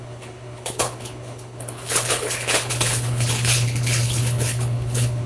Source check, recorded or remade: remade